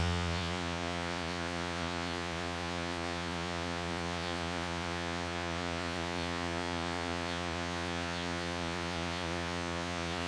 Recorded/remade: remade